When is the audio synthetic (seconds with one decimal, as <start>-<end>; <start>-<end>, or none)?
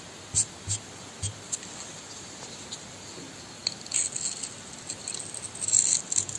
none